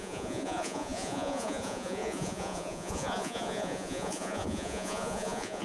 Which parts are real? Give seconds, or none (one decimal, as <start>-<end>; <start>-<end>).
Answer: none